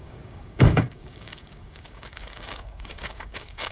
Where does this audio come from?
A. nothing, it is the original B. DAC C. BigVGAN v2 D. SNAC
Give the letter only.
B